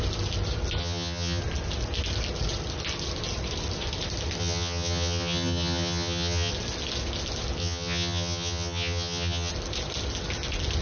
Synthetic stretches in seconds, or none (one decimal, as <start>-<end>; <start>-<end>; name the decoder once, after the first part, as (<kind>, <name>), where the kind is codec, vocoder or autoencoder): 0.8-1.4 (vocoder, HiFi-GAN); 4.4-6.5; 7.6-9.5